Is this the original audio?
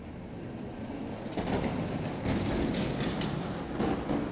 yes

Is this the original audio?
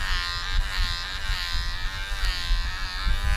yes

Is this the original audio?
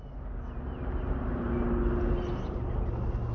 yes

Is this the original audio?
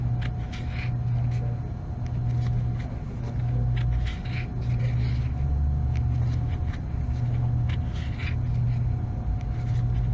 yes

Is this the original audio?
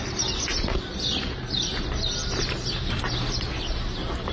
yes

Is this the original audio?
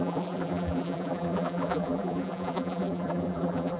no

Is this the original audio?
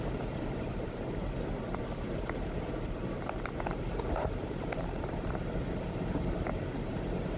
no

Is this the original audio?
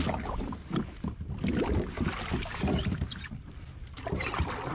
yes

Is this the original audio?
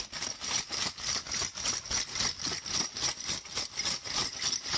yes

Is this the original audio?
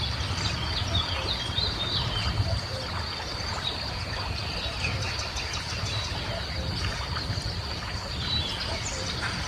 no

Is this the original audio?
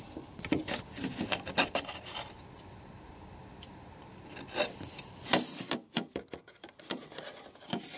no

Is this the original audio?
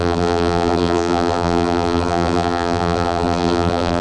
no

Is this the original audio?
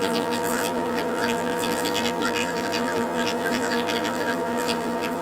no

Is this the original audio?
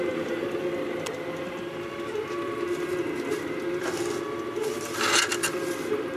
yes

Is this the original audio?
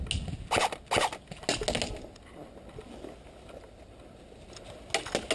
yes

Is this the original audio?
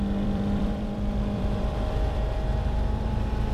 no